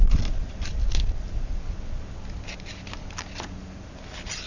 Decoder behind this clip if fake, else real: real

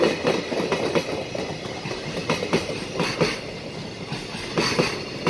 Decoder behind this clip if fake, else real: real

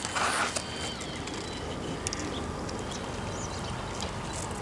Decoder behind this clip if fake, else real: real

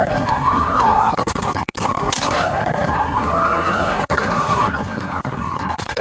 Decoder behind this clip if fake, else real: fake, codec, SNAC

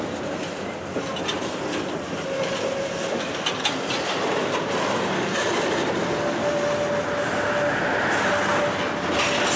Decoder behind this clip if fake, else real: real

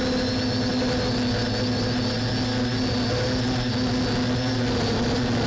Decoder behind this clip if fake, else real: real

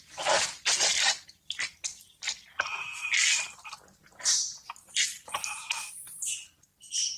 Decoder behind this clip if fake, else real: real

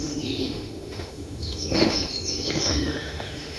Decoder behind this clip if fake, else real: fake, autoencoder, DAC-VAE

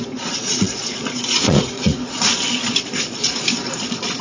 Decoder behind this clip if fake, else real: fake, vocoder, Vocos